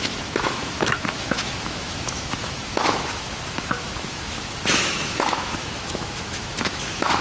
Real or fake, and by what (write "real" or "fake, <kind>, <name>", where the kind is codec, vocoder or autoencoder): fake, autoencoder, DAC-VAE